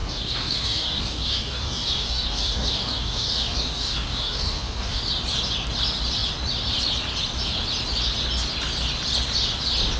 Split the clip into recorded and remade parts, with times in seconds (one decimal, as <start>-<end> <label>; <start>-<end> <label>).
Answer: 0.0-5.0 remade; 5.0-10.0 recorded